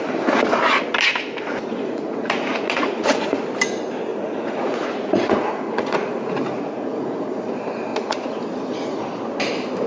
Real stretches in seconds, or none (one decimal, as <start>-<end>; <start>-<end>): 0.0-1.7; 3.4-4.1; 7.4-7.9; 8.4-9.9